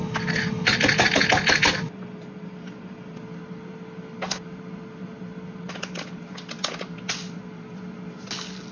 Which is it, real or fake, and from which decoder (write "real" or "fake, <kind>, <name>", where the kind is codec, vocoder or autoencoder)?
real